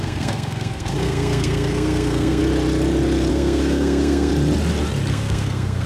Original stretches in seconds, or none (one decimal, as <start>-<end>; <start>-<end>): 2.4-3.3; 4.3-5.1